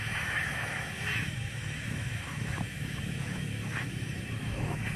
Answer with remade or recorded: remade